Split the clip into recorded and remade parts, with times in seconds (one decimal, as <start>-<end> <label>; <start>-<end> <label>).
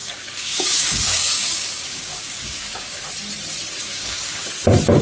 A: 0.0-3.0 remade; 3.0-3.8 recorded; 3.8-4.5 remade; 4.5-5.0 recorded